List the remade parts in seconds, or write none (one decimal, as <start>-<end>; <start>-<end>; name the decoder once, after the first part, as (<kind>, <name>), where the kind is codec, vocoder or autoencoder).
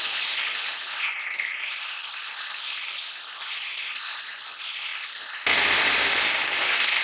none